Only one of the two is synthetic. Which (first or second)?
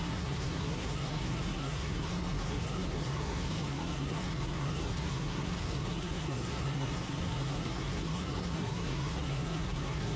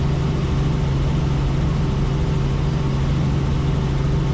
first